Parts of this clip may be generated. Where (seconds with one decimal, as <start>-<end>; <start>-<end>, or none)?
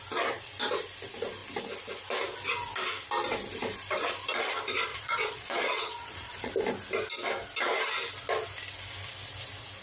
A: 4.9-6.5